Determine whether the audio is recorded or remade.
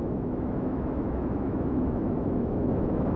remade